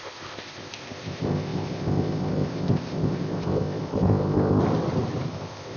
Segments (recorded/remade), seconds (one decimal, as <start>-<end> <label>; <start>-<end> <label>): 0.0-4.6 remade; 4.6-5.3 recorded; 5.3-5.8 remade